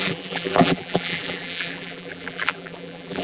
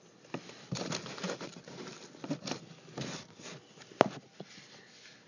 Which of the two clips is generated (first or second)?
first